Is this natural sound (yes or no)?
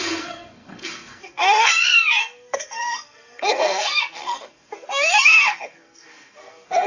no